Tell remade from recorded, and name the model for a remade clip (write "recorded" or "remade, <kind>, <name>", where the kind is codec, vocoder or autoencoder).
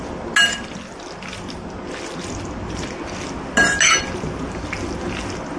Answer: recorded